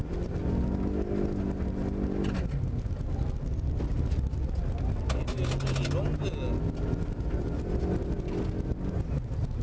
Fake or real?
real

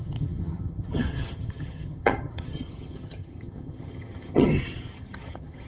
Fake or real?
fake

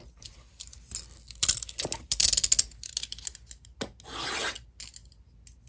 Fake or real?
real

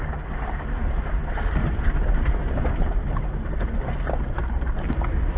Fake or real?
real